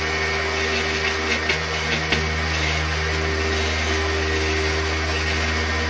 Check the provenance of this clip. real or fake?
real